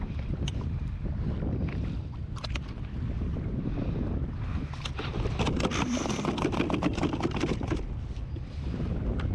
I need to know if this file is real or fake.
real